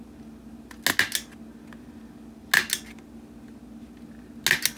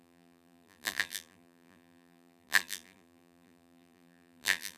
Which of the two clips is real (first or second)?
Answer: first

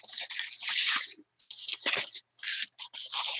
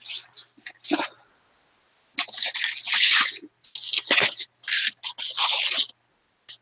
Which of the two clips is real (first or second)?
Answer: second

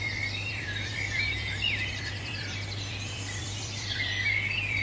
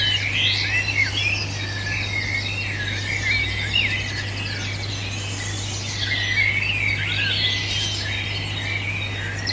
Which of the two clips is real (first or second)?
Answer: second